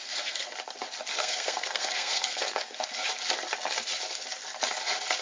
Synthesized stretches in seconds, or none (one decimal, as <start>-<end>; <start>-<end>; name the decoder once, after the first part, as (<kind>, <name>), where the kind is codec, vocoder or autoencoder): 0.0-0.5 (codec, SNAC); 1.2-2.9